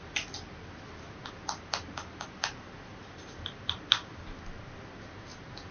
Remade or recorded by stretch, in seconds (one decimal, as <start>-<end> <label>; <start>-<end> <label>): 0.0-5.7 recorded